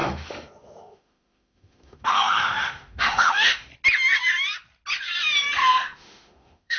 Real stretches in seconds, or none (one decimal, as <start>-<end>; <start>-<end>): 3.7-5.6